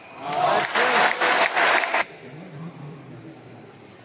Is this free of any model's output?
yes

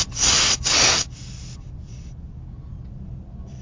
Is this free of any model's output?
no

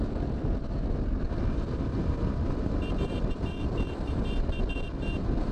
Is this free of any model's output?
no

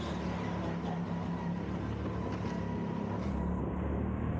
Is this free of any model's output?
yes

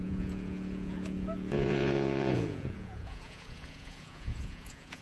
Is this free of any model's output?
no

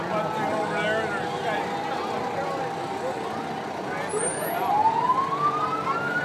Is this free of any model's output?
yes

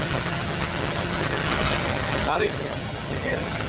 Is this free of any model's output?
no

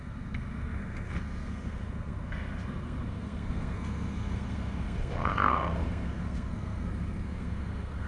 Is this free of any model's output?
no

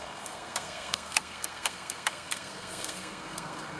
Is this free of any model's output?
no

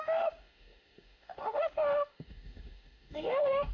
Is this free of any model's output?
no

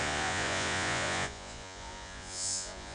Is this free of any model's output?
no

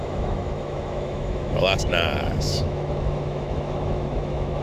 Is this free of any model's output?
no